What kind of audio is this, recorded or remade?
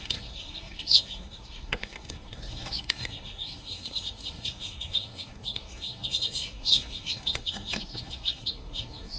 remade